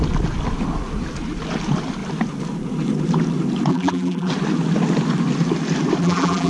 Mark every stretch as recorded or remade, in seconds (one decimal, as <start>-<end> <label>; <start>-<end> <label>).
0.0-3.7 recorded; 3.7-4.3 remade; 4.3-6.0 recorded; 6.0-6.5 remade